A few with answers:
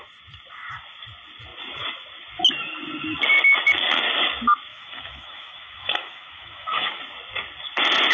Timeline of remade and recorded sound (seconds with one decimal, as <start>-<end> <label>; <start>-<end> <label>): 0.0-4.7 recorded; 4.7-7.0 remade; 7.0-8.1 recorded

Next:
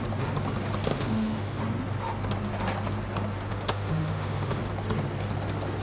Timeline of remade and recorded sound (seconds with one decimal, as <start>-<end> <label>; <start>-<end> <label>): 0.0-0.9 recorded; 0.9-1.6 remade; 1.6-3.5 recorded; 3.5-4.6 remade; 4.6-5.8 recorded

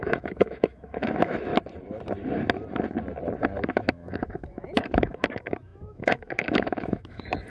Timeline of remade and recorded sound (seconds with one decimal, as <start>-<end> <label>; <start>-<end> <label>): 0.0-1.5 remade; 1.5-3.7 recorded; 3.7-7.5 remade

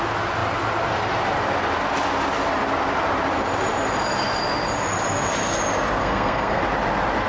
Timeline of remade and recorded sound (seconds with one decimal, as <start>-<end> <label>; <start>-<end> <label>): 0.0-6.0 recorded; 6.0-6.6 remade; 6.6-7.3 recorded

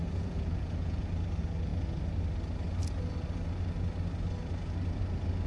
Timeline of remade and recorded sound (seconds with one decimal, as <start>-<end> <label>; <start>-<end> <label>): 0.0-1.1 remade; 1.1-5.5 recorded

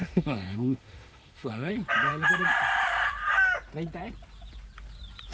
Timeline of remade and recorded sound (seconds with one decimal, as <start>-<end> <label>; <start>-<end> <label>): 0.0-1.7 remade; 1.7-5.3 recorded

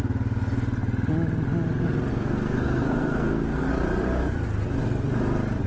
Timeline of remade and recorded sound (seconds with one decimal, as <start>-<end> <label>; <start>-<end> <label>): 0.0-2.1 recorded; 2.1-3.7 remade; 3.7-5.7 recorded